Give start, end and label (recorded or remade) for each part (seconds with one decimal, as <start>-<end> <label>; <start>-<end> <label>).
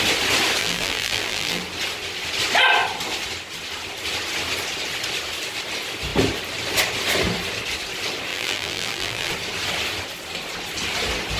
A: 0.0-0.6 recorded; 0.6-1.6 remade; 1.6-8.3 recorded; 8.3-9.3 remade; 9.3-11.4 recorded